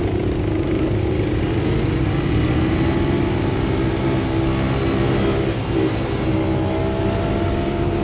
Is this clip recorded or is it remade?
recorded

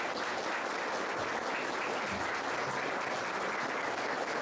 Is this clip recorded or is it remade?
recorded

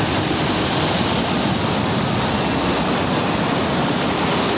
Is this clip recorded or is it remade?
recorded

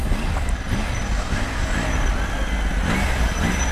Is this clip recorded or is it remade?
recorded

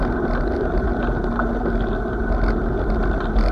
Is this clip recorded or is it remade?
recorded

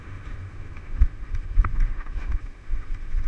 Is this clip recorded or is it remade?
remade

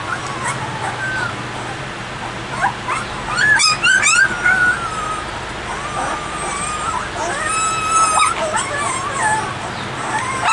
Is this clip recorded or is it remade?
recorded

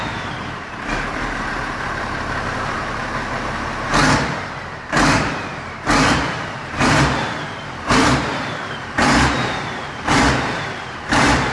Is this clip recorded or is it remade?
remade